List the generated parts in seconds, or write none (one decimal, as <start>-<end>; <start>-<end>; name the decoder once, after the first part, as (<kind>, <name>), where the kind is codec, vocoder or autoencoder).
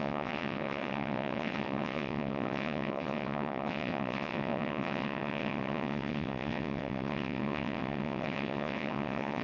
0.0-9.4 (vocoder, WaveNeXt)